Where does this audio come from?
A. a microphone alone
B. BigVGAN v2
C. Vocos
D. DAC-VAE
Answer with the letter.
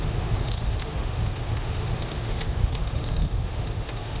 D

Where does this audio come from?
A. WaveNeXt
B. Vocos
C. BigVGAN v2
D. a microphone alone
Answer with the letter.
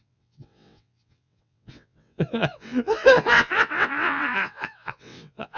A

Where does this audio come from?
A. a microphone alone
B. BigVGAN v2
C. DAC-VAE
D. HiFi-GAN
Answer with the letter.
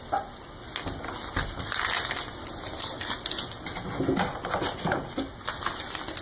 A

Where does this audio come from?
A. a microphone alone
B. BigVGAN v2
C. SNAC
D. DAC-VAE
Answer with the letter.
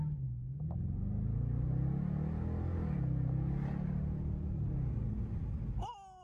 A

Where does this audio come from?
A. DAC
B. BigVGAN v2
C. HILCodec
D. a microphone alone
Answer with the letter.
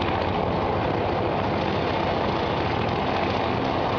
D